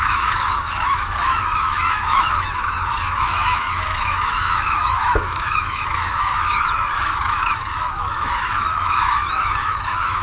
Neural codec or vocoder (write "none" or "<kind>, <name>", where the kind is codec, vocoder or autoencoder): autoencoder, DAC-VAE